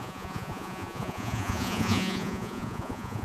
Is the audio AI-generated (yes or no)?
yes